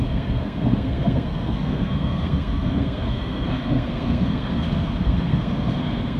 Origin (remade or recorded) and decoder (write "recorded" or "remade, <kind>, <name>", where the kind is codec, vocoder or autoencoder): remade, codec, SNAC